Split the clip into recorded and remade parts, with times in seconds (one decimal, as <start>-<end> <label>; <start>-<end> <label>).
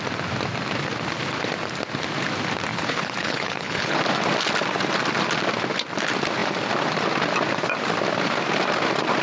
0.0-2.7 recorded; 2.7-4.0 remade; 4.0-9.2 recorded